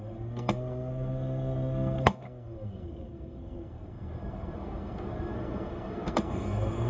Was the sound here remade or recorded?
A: remade